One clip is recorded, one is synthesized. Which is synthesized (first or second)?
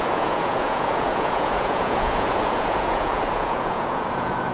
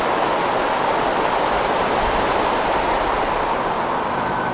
first